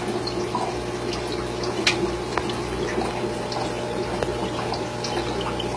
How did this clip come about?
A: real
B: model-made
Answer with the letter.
A